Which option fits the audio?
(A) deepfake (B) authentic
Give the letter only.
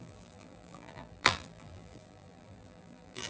A